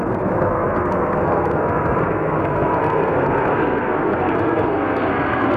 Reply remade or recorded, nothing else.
remade